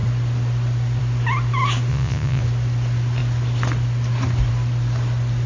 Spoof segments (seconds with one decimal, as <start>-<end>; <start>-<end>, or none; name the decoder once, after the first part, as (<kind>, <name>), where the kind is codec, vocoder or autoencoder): 1.9-2.4 (vocoder, Vocos)